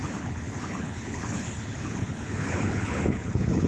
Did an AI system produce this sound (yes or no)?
yes